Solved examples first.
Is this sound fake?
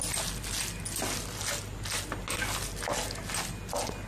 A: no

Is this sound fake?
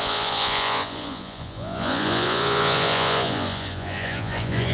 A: yes